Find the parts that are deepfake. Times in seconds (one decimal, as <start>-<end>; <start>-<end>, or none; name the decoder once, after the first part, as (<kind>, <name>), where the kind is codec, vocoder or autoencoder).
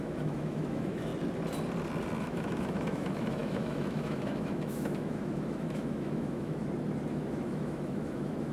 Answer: 0.0-1.1 (autoencoder, DAC-VAE); 2.2-6.6; 7.1-8.5